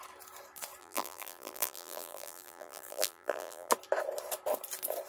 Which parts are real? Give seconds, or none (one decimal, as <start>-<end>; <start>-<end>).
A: 0.0-0.8; 3.7-5.1